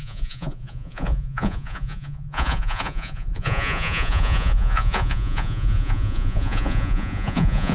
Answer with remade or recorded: remade